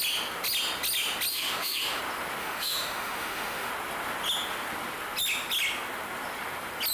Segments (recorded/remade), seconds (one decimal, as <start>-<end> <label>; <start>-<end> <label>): 0.0-1.3 recorded; 1.3-2.0 remade; 2.0-2.4 recorded; 2.4-3.7 remade; 3.7-6.9 recorded